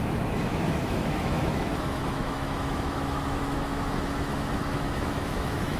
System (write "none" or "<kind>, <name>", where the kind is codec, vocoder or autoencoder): autoencoder, DAC-VAE